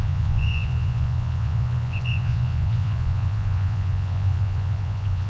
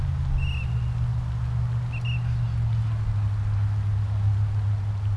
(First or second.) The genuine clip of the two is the second